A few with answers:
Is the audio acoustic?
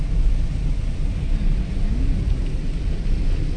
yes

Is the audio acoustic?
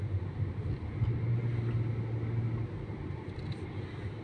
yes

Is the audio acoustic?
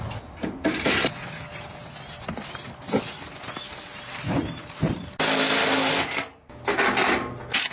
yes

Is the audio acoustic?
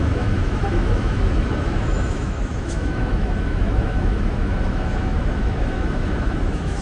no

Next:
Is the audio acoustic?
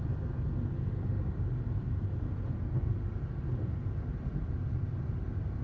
yes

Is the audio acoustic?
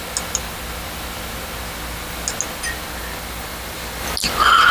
yes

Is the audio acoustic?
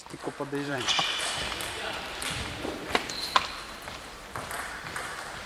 no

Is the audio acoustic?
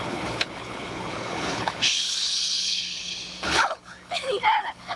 no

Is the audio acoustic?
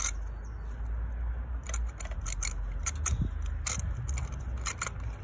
yes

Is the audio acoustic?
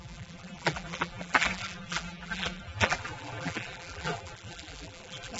no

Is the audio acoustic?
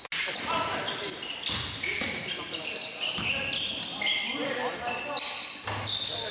yes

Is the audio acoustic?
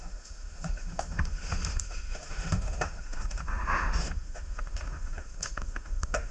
no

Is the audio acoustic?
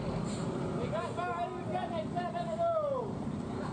yes